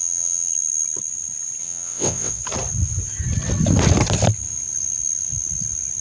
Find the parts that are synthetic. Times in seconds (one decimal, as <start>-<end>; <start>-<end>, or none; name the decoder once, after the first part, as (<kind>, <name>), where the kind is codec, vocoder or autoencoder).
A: 0.0-0.5 (vocoder, WaveNeXt); 1.6-2.4